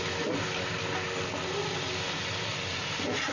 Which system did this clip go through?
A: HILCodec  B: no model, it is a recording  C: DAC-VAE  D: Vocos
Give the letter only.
B